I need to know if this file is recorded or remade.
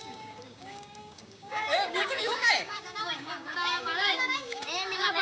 remade